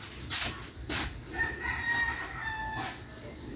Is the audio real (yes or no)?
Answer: yes